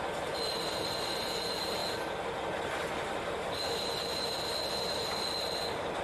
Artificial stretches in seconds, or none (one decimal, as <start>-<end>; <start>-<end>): none